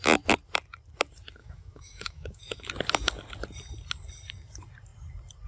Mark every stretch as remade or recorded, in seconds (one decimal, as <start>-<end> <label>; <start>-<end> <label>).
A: 0.0-1.4 recorded; 1.4-2.7 remade; 2.7-5.5 recorded